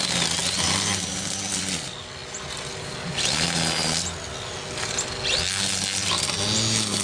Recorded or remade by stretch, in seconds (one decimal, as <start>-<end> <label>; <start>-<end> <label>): 0.0-7.0 recorded